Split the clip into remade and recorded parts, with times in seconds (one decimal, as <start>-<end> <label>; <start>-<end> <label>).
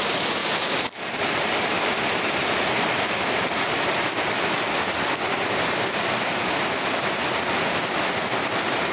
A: 0.0-0.4 recorded; 0.4-4.7 remade; 4.7-8.9 recorded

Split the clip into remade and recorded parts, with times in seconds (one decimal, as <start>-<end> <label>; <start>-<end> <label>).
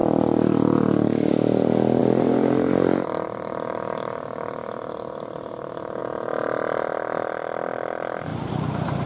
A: 0.0-2.0 recorded; 2.0-6.0 remade; 6.0-8.3 recorded; 8.3-9.1 remade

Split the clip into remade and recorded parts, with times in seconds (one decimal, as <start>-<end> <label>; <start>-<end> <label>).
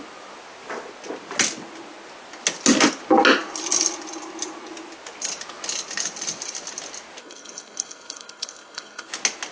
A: 0.0-7.2 recorded; 7.2-9.1 remade; 9.1-9.5 recorded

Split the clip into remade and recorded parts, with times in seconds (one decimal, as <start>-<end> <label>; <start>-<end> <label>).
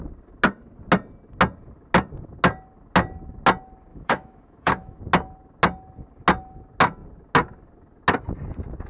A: 0.0-3.9 recorded; 3.9-5.0 remade; 5.0-8.9 recorded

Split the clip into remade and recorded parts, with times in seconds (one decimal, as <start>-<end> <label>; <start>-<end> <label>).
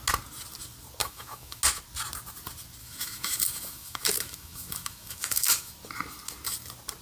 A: 0.0-1.0 recorded; 1.0-1.6 remade; 1.6-2.8 recorded; 2.8-5.7 remade; 5.7-7.0 recorded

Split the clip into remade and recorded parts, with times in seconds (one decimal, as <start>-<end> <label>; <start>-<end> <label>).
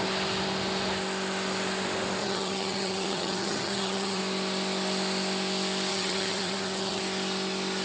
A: 0.0-2.2 recorded; 2.2-4.2 remade; 4.2-5.9 recorded; 5.9-7.0 remade; 7.0-7.8 recorded